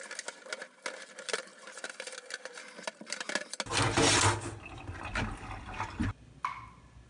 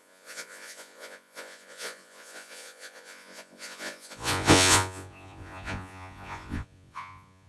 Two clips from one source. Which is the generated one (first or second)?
second